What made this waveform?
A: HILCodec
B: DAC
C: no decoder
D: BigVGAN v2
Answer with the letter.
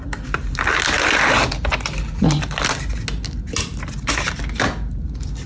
C